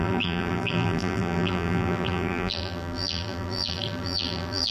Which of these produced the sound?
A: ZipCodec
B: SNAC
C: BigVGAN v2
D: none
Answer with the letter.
C